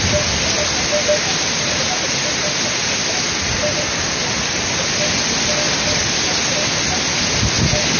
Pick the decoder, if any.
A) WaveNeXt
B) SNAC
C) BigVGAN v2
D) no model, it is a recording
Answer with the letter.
D